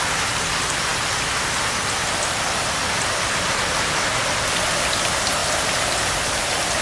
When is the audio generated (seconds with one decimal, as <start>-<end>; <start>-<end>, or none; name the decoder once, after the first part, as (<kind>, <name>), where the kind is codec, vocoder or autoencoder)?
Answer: 5.4-6.8 (vocoder, BigVGAN v2)